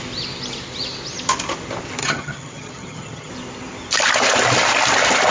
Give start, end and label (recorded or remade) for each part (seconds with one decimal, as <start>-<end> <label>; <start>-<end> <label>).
0.0-2.0 recorded; 2.0-3.3 remade; 3.3-5.3 recorded